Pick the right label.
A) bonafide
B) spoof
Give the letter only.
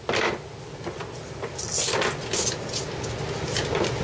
A